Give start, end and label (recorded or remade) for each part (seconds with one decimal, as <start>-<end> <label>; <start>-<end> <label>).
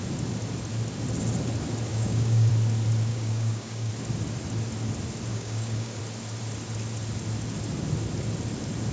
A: 0.0-1.9 recorded; 1.9-2.5 remade; 2.5-3.1 recorded; 3.1-3.9 remade; 3.9-5.3 recorded; 5.3-6.0 remade; 6.0-8.9 recorded